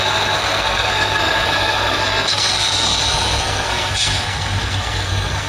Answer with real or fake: fake